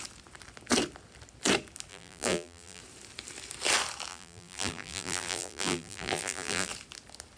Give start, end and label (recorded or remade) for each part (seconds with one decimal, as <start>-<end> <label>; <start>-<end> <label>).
0.0-1.9 recorded; 1.9-2.8 remade; 2.8-4.1 recorded; 4.1-6.7 remade; 6.7-7.4 recorded

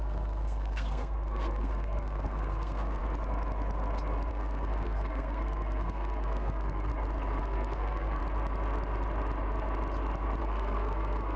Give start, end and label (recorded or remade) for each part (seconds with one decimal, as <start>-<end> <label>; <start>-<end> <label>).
0.0-3.0 remade; 3.0-4.3 recorded; 4.3-6.9 remade; 6.9-7.4 recorded; 7.4-8.2 remade; 8.2-10.4 recorded; 10.4-11.4 remade